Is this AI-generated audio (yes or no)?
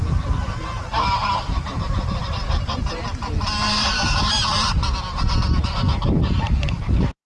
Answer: yes